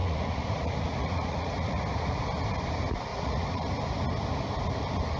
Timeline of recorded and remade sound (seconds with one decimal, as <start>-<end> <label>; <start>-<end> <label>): 0.0-1.8 remade; 1.8-3.1 recorded; 3.1-3.7 remade; 3.7-5.2 recorded